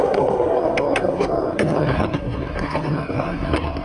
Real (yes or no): no